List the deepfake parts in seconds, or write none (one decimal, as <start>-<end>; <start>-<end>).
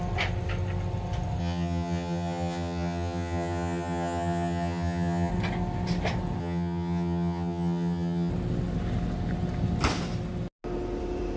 1.4-5.3; 6.4-8.3